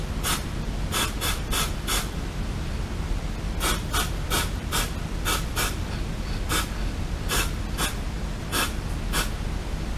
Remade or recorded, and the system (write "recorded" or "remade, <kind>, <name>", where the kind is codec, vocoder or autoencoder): recorded